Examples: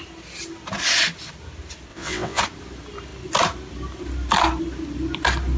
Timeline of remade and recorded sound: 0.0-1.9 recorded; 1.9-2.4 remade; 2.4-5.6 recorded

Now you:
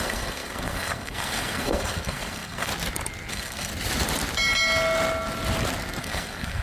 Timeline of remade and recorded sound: 0.0-2.7 remade; 2.7-3.3 recorded; 3.3-3.7 remade; 3.7-6.0 recorded; 6.0-6.6 remade

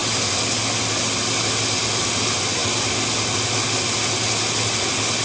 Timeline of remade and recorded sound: 0.0-5.2 recorded

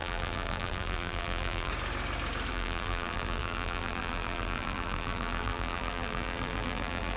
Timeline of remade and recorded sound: 0.0-1.7 remade; 1.7-2.5 recorded; 2.5-7.2 remade